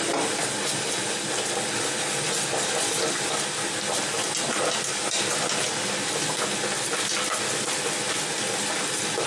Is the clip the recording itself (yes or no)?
yes